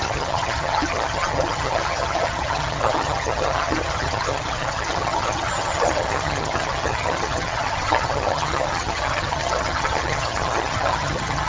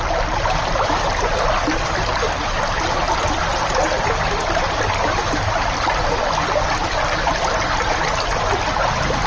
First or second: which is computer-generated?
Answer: first